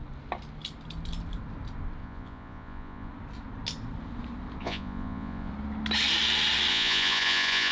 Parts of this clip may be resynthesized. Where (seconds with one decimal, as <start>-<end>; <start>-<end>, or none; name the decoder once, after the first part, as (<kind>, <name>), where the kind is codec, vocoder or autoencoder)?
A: 2.0-3.1 (vocoder, Vocos); 4.6-5.5; 6.7-7.7